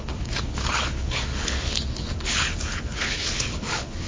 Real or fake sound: fake